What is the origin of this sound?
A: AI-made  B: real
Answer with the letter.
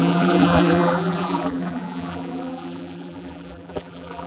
A